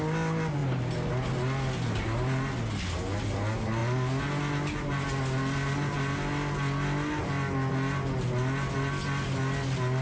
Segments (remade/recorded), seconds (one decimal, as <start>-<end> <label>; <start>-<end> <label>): 0.0-10.0 recorded